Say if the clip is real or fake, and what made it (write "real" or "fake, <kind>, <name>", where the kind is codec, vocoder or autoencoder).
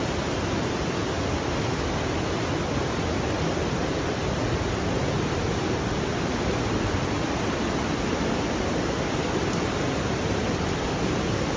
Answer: real